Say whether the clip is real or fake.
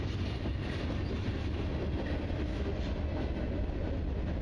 real